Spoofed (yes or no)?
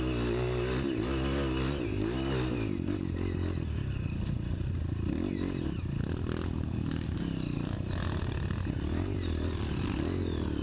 no